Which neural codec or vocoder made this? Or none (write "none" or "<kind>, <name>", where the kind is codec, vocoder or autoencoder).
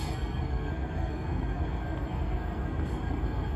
codec, SNAC